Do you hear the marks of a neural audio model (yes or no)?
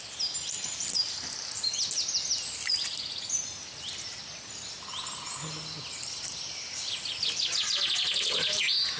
no